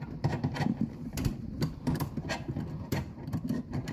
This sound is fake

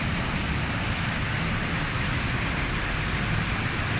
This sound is real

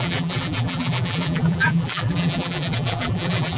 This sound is fake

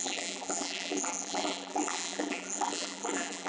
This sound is fake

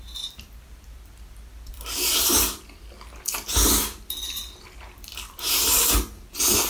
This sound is fake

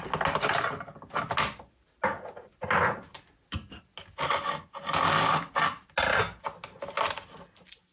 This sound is real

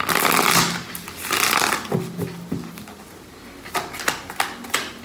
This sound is real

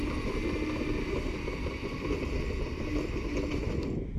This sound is fake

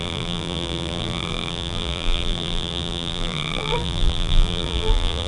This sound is fake